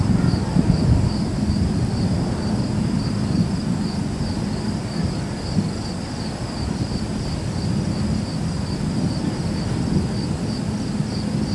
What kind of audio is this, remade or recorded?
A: recorded